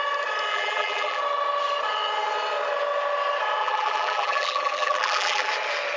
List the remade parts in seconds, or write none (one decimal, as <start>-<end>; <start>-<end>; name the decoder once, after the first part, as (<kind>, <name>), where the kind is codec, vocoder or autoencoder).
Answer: 0.5-1.2 (vocoder, BigVGAN v2); 3.6-5.5